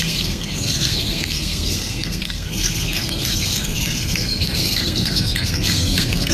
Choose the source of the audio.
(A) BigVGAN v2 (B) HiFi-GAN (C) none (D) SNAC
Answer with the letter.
D